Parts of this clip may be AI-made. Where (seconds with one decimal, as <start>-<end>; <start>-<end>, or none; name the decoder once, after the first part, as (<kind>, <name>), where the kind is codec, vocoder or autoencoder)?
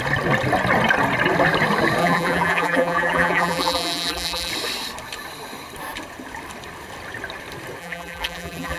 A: 2.0-4.5 (vocoder, BigVGAN v2); 7.8-8.8